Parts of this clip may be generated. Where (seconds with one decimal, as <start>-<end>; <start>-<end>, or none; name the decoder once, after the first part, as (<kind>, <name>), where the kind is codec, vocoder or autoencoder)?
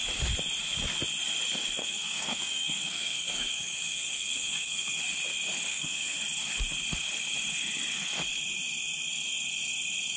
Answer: 1.8-5.0 (codec, SNAC); 5.7-6.2